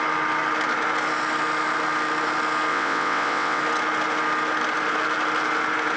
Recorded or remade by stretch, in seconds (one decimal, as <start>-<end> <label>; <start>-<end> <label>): 0.0-2.7 recorded; 2.7-3.6 remade; 3.6-6.0 recorded

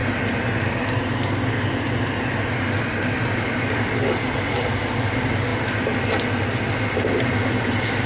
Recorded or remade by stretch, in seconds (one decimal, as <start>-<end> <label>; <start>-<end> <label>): 0.0-8.1 recorded